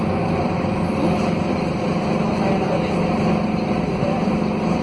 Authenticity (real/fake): real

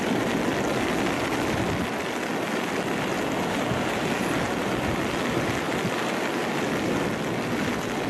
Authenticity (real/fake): real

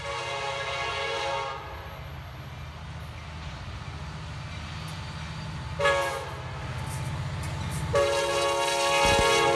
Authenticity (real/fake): real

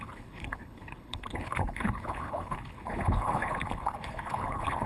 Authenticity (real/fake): fake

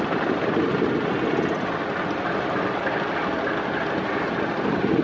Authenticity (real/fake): real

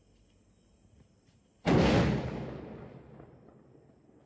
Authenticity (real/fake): real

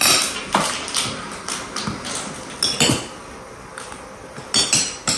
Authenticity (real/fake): real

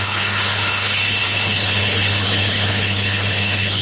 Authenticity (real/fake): fake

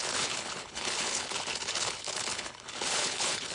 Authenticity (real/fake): fake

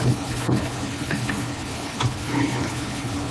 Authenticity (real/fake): fake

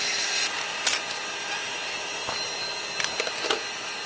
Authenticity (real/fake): real